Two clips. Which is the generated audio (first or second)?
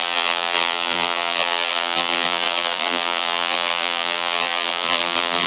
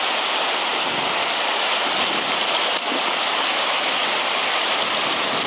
first